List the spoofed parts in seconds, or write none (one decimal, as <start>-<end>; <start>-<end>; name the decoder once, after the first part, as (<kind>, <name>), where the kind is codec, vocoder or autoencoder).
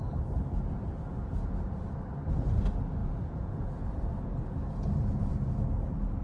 1.1-1.7 (vocoder, Vocos); 3.0-5.3